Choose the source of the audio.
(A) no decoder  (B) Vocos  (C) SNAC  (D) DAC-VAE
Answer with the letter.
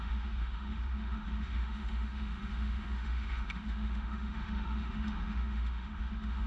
D